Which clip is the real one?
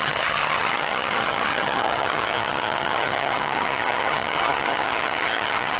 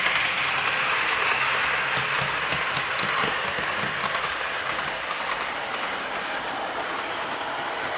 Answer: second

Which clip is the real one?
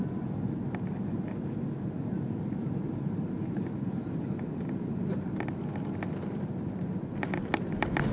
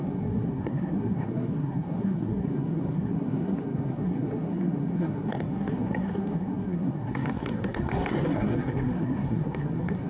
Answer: first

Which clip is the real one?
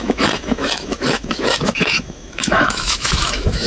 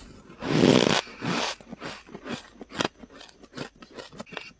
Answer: second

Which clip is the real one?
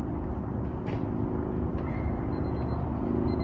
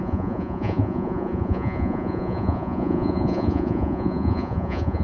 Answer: first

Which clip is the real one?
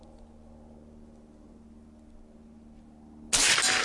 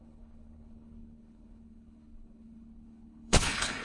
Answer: first